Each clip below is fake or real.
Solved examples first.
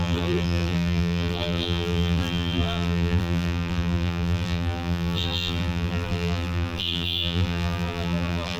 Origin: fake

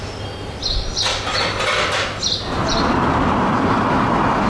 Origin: real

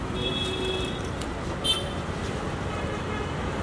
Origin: real